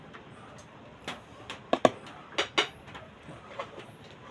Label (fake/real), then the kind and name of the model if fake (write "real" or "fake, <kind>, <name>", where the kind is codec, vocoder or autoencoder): real